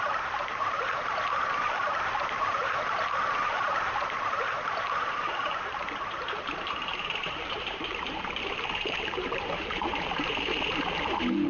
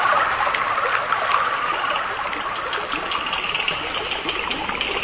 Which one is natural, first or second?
second